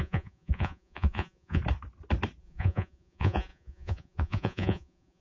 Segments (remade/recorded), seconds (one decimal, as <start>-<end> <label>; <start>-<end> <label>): 0.0-1.6 remade; 1.6-2.4 recorded; 2.4-5.2 remade